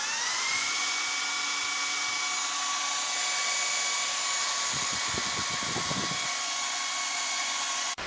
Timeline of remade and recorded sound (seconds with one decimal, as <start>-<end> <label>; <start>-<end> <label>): 0.0-1.0 remade; 1.0-4.7 recorded; 4.7-8.1 remade